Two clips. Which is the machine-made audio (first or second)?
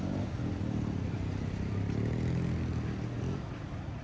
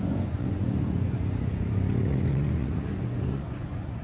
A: second